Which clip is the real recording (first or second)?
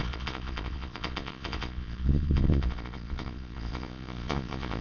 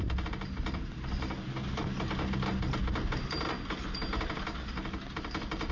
second